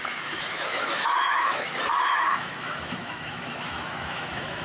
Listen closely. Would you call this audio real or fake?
fake